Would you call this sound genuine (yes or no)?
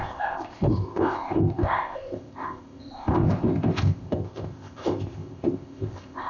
no